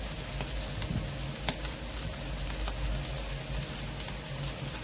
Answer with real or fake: real